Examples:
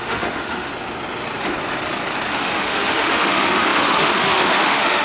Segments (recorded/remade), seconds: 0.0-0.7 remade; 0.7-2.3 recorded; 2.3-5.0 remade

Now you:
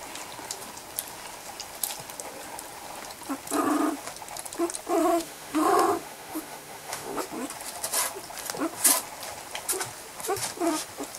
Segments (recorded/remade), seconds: 0.0-5.0 recorded; 5.0-7.2 remade; 7.2-11.2 recorded